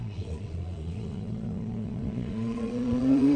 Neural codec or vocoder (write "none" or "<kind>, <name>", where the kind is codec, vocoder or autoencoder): vocoder, Vocos